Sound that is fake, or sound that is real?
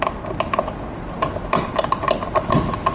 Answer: real